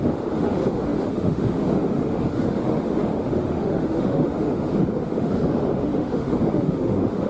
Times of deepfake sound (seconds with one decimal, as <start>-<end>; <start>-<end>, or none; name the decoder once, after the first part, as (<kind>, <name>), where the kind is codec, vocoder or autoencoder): 0.0-7.3 (autoencoder, DAC-VAE)